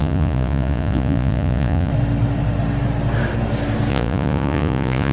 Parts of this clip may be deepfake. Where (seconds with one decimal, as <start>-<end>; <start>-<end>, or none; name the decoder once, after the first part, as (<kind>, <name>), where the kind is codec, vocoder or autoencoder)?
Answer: 0.0-1.9 (vocoder, Vocos); 3.9-5.1